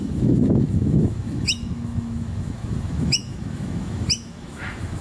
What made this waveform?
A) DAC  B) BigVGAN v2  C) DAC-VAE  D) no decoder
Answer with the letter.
C